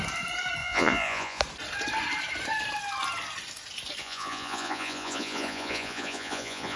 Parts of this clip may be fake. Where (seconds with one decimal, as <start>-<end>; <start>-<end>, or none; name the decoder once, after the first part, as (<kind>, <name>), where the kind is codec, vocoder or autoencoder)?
0.6-1.4 (vocoder, Vocos); 4.0-6.8